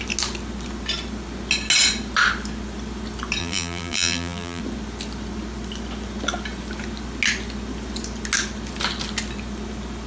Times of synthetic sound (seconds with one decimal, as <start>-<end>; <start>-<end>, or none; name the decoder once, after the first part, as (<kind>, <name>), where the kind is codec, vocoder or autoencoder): 3.4-4.6 (vocoder, BigVGAN v2)